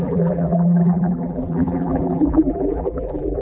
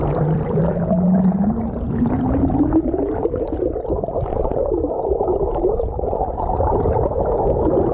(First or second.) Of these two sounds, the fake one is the first